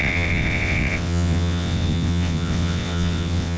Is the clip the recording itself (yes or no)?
no